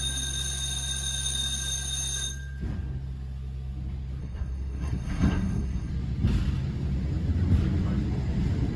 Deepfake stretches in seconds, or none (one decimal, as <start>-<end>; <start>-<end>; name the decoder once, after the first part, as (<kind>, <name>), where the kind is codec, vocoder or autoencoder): 4.2-5.9 (codec, SNAC)